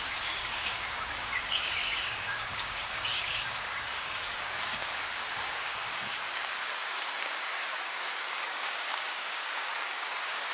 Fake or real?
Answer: fake